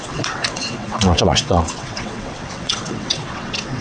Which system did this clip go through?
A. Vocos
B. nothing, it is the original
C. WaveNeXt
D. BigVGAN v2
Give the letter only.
C